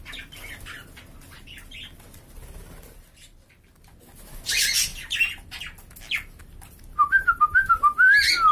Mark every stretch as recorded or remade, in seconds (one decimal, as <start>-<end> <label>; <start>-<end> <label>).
0.0-4.9 recorded; 4.9-5.6 remade; 5.6-8.5 recorded